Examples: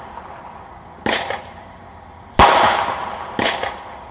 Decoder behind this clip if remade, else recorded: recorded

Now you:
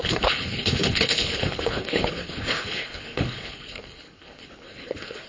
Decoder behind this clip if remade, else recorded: remade, codec, HILCodec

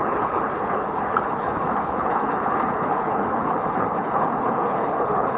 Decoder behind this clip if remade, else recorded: remade, codec, HILCodec